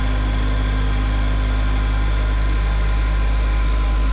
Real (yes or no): yes